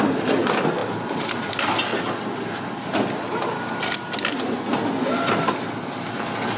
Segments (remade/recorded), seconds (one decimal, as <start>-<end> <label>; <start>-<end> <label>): 0.0-1.9 remade; 1.9-5.9 recorded; 5.9-6.6 remade